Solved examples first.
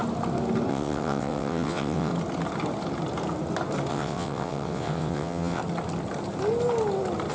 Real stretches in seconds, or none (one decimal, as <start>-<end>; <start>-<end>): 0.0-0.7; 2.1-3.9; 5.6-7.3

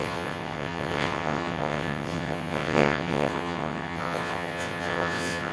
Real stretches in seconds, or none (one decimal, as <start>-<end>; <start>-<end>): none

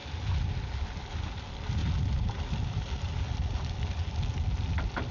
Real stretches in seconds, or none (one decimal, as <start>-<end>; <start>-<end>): 0.0-5.1